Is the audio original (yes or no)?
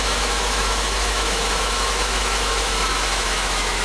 no